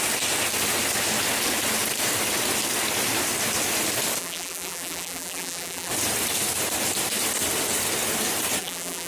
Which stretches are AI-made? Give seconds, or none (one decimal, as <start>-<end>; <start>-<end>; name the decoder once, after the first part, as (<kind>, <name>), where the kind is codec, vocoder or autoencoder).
4.2-5.9 (vocoder, BigVGAN v2); 8.6-9.1